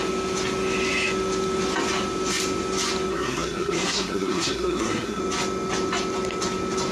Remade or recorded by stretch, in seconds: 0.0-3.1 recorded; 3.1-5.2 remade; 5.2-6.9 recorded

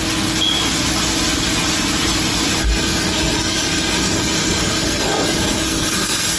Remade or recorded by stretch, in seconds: 0.0-2.6 recorded; 2.6-6.4 remade

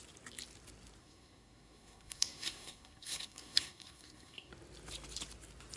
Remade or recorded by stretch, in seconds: 0.0-1.0 recorded; 1.0-4.5 remade; 4.5-5.8 recorded

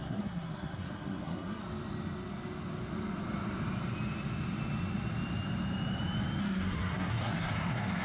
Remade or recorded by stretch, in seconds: 0.0-1.6 remade; 1.6-6.4 recorded; 6.4-8.0 remade

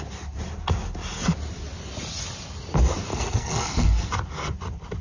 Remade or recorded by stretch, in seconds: 0.0-3.1 recorded; 3.1-4.1 remade; 4.1-5.0 recorded